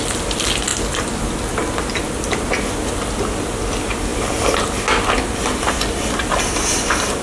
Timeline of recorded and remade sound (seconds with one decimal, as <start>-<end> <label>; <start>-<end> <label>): 0.0-7.2 recorded